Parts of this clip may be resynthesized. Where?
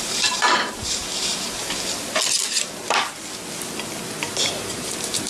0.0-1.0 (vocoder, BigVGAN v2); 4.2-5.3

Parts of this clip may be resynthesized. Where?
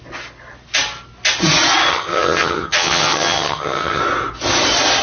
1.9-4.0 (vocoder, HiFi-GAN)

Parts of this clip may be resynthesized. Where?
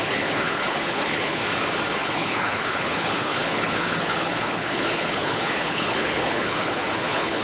0.0-1.4 (codec, HILCodec); 2.0-7.4